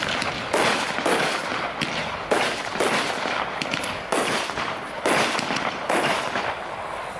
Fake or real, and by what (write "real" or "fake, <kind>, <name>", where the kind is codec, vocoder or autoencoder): real